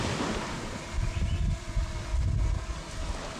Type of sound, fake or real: real